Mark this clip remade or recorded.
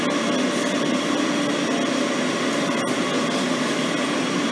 recorded